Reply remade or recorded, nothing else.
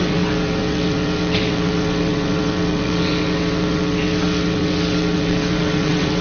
remade